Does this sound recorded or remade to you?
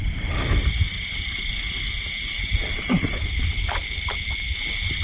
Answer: recorded